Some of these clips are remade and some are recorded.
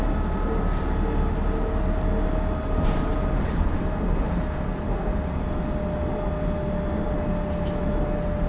recorded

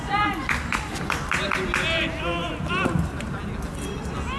recorded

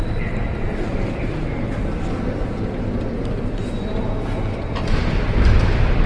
recorded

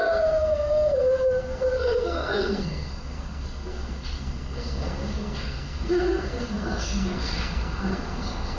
remade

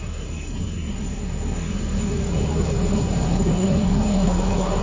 remade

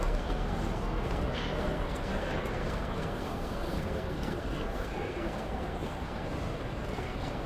remade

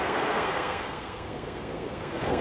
remade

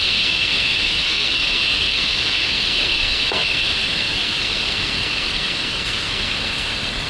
remade